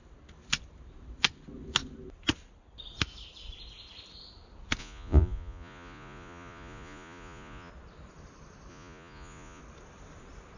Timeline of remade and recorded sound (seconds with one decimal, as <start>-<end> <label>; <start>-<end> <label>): 0.0-4.8 recorded; 4.8-7.7 remade; 7.7-8.7 recorded; 8.7-9.6 remade; 9.6-10.6 recorded